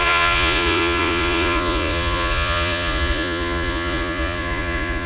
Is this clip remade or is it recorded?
remade